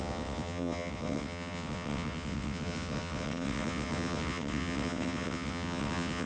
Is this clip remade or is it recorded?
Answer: remade